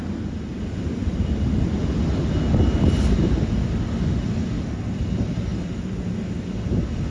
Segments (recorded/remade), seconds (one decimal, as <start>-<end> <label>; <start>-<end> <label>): 0.0-7.1 recorded